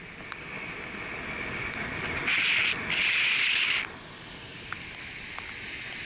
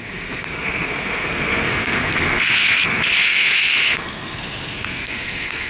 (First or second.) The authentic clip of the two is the first